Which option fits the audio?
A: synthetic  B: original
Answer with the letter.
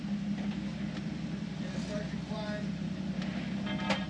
B